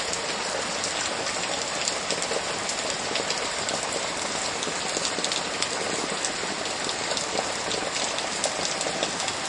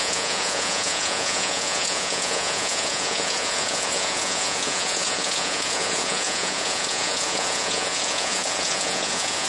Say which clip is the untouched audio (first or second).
first